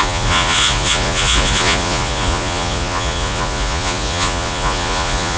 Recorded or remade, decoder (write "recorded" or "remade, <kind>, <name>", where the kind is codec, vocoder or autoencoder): remade, vocoder, Vocos